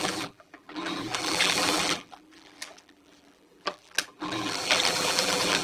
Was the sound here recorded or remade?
remade